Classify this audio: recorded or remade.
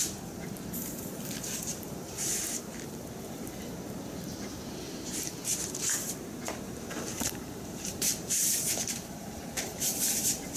remade